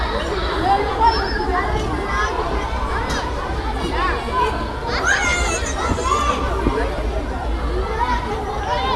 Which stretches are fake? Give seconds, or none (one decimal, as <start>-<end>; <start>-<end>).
none